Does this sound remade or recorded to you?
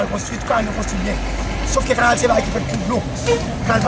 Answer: recorded